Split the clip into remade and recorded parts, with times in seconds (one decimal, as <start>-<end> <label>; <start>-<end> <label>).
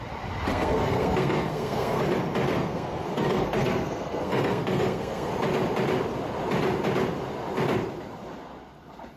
0.0-0.5 recorded; 0.5-2.0 remade; 2.0-2.5 recorded; 2.5-5.3 remade; 5.3-9.2 recorded